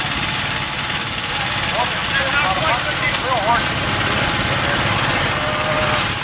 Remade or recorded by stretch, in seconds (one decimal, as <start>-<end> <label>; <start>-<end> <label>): 0.0-6.2 recorded